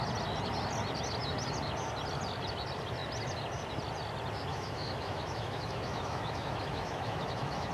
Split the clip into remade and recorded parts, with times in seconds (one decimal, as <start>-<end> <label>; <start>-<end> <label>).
0.0-4.5 recorded; 4.5-7.7 remade